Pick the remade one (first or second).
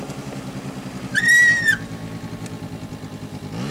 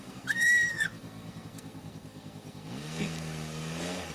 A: second